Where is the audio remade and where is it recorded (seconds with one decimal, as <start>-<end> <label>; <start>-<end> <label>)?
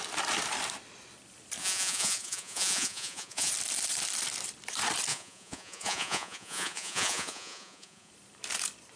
0.0-1.6 recorded; 1.6-3.5 remade; 3.5-5.1 recorded; 5.1-8.1 remade; 8.1-9.0 recorded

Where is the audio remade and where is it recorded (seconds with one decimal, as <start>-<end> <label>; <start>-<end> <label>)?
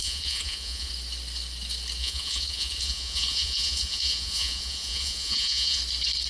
0.0-0.9 remade; 0.9-2.0 recorded; 2.0-5.8 remade; 5.8-6.3 recorded